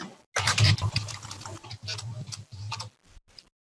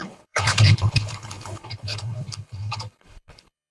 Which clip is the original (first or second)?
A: first